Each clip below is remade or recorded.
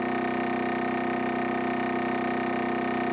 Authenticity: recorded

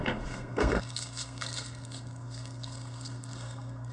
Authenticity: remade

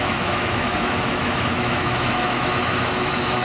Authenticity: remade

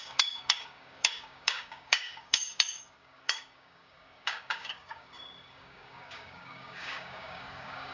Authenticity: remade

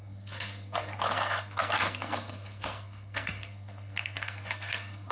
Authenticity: remade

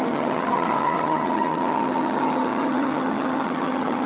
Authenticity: remade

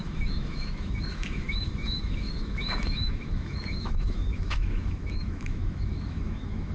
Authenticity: remade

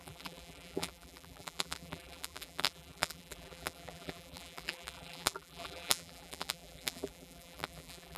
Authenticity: remade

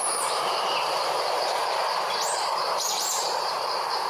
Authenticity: remade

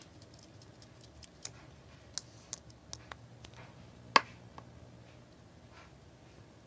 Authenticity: recorded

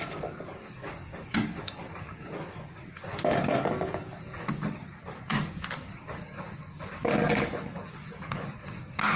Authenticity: remade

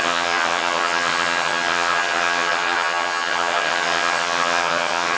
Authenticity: remade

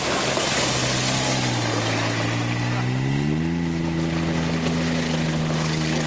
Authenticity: recorded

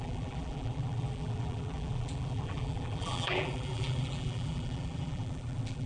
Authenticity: remade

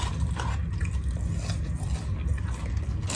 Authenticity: recorded